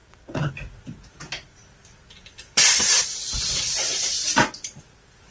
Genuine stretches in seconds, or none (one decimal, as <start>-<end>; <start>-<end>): 0.5-5.3